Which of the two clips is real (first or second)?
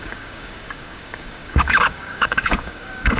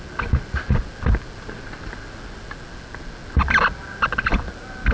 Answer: second